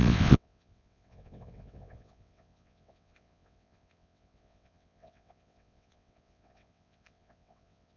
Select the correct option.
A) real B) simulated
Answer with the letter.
B